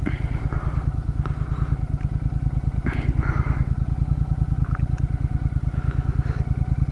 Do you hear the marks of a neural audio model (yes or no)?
no